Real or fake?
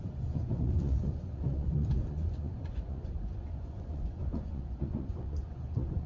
fake